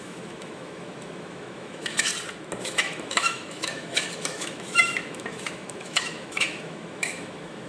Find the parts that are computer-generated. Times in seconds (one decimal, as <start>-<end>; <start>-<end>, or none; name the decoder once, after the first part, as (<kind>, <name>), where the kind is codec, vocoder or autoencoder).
0.0-2.1 (autoencoder, DAC-VAE); 2.6-7.7